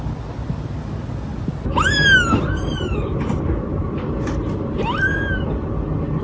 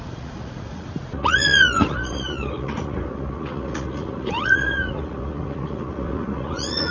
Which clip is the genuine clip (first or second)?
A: first